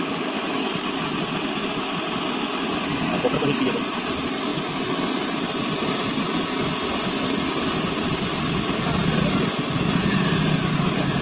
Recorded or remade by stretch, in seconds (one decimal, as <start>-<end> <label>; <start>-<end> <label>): 0.0-11.2 recorded